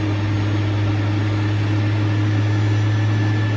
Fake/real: real